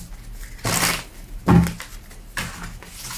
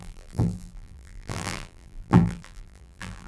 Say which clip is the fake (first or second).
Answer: second